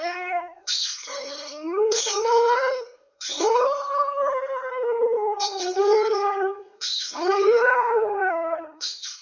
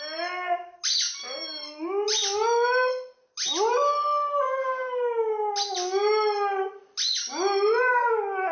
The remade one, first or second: first